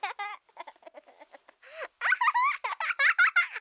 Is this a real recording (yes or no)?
yes